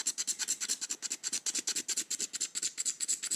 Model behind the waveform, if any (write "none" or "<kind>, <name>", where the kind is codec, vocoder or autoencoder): none